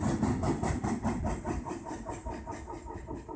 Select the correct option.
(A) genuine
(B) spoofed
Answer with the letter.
A